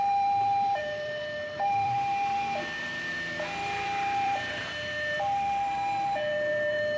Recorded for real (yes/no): no